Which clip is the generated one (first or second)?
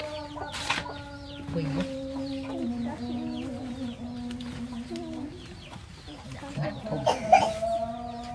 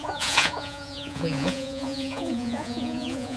second